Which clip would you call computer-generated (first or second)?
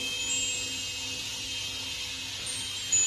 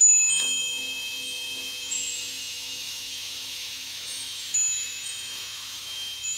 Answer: second